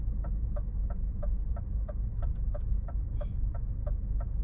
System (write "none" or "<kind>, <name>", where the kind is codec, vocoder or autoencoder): vocoder, BigVGAN v2